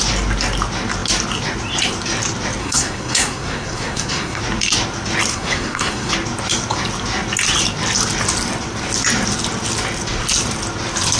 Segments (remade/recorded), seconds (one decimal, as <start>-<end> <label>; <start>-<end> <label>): 0.0-2.6 recorded; 2.6-4.4 remade; 4.4-5.3 recorded; 5.3-6.1 remade; 6.1-11.2 recorded